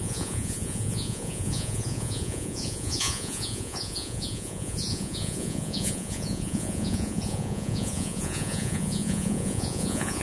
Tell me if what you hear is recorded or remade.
remade